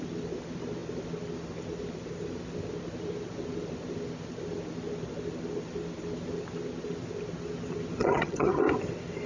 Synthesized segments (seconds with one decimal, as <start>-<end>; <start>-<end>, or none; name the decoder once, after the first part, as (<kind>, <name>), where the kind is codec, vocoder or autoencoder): 8.0-8.6 (vocoder, HiFi-GAN)